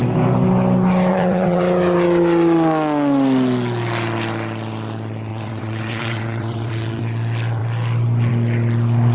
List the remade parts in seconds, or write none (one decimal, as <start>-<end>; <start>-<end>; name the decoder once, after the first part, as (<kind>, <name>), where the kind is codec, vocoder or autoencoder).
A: 1.1-1.6 (vocoder, WaveNeXt); 5.3-7.0